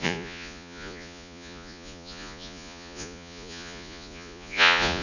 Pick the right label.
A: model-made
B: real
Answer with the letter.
A